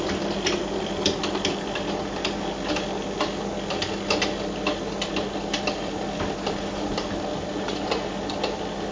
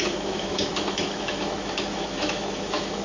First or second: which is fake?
second